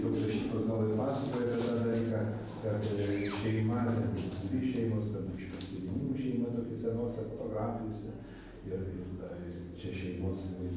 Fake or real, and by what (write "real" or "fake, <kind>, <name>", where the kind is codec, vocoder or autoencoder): real